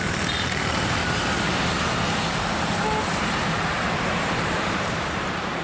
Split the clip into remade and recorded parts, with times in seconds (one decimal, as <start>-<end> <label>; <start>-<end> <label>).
0.0-1.6 remade; 1.6-3.2 recorded; 3.2-5.6 remade